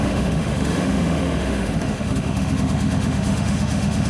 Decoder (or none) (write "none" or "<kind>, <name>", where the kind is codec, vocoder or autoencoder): autoencoder, DAC-VAE